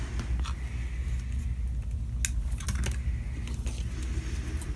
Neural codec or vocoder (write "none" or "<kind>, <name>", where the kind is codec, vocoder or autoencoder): none